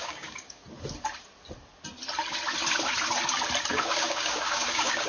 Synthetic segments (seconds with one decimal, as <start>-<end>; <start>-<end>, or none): 0.0-0.6; 3.7-5.1